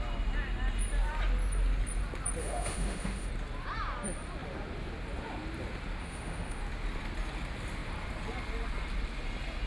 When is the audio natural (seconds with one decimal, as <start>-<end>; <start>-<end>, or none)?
0.0-2.4; 3.3-6.0; 6.6-9.7